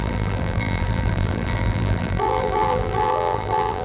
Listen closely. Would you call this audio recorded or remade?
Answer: remade